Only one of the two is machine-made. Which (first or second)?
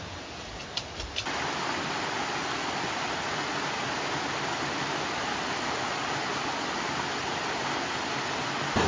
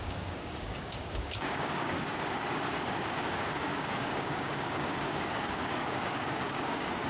second